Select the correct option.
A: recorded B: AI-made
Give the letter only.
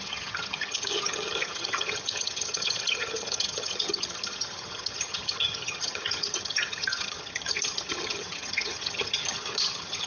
B